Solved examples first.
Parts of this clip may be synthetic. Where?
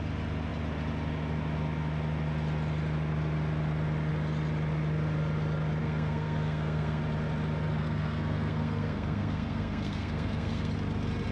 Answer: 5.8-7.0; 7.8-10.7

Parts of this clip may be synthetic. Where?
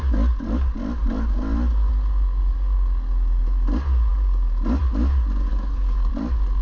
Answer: 5.5-6.1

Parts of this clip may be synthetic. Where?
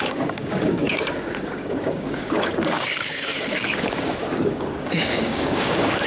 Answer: 0.0-6.1